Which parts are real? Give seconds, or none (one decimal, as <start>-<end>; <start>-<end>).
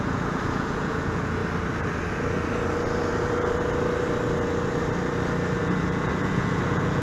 1.4-5.6